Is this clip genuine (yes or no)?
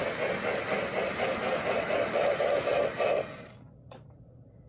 yes